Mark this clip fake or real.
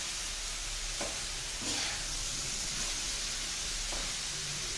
real